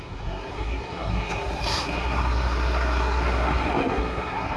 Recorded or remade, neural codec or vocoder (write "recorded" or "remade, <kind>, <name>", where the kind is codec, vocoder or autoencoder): remade, codec, SNAC